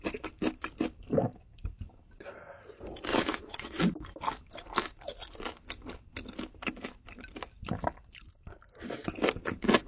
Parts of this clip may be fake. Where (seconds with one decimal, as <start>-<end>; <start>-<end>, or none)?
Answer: 3.1-3.8